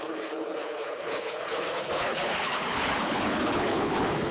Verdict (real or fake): fake